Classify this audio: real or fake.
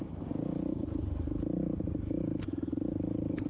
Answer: real